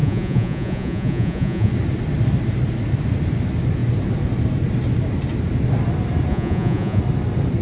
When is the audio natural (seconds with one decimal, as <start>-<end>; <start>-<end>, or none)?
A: 1.7-6.3; 7.0-7.6